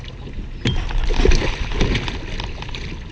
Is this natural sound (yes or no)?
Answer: yes